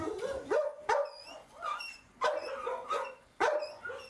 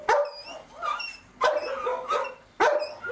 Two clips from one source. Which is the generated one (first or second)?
first